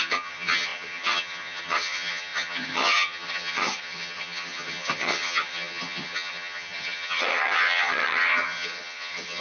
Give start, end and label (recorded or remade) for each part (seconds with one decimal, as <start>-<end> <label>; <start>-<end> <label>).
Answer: 0.0-9.4 remade